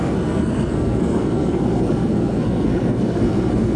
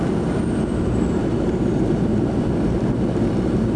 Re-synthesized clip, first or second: first